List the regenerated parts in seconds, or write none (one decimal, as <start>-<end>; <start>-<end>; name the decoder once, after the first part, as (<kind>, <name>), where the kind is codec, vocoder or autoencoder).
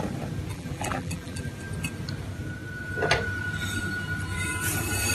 0.5-1.5 (vocoder, BigVGAN v2)